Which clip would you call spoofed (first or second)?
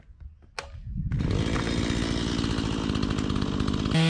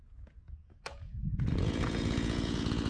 second